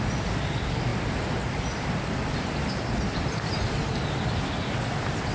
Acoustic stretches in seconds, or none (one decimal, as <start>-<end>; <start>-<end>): 0.0-5.3